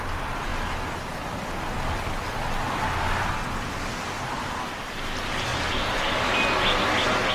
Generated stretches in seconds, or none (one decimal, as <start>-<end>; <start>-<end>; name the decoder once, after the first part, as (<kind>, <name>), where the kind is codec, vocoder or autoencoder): 3.9-4.6 (vocoder, BigVGAN v2); 5.5-6.3

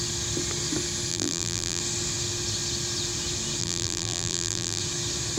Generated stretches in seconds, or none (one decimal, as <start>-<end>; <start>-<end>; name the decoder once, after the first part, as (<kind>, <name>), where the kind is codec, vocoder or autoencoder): 1.1-1.8 (vocoder, BigVGAN v2); 3.6-4.8

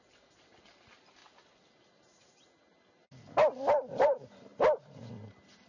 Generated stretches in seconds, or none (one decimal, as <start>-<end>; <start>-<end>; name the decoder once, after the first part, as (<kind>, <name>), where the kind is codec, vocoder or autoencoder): 0.0-1.2 (vocoder, BigVGAN v2); 3.9-5.7